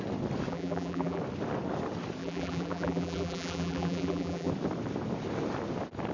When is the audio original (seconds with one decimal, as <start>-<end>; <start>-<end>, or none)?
0.0-0.5; 1.2-2.2; 4.5-6.1

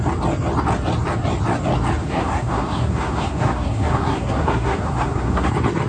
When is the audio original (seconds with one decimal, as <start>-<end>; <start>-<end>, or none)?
0.0-2.0; 5.5-5.9

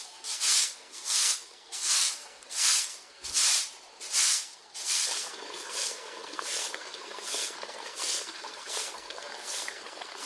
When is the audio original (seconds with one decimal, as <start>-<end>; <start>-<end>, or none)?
3.4-4.2

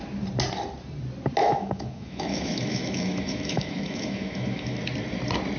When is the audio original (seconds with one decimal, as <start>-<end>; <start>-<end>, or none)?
0.0-1.4; 4.8-5.6

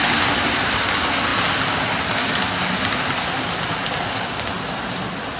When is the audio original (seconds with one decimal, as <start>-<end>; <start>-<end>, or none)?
0.0-5.4

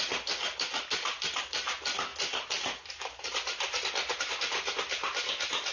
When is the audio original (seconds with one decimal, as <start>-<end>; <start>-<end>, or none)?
0.0-5.7

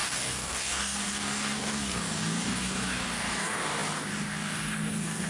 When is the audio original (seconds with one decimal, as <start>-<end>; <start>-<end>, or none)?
none

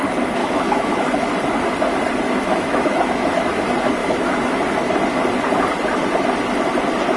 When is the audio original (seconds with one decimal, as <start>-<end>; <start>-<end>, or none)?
0.0-0.4; 1.0-2.5; 3.6-4.0; 4.9-7.2